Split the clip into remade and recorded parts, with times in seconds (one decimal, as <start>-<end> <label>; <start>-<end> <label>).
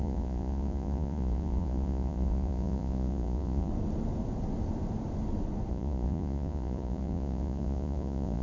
0.0-3.7 remade; 3.7-5.7 recorded; 5.7-8.4 remade